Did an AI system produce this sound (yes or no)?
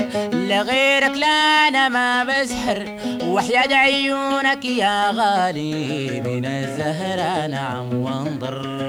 yes